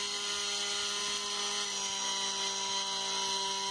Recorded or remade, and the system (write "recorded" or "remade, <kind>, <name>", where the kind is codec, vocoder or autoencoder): recorded